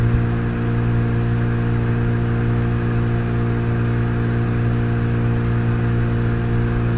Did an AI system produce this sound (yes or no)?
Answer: no